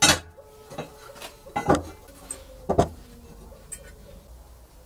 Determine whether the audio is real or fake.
real